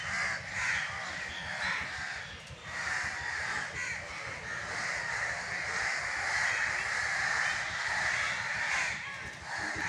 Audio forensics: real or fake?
real